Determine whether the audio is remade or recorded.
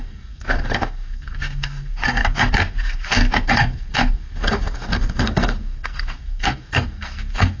remade